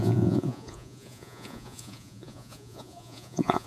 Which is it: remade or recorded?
remade